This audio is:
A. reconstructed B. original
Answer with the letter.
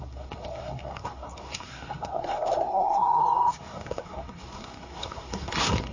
A